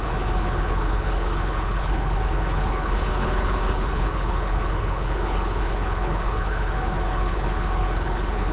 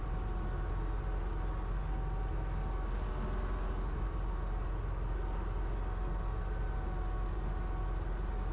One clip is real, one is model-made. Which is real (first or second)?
second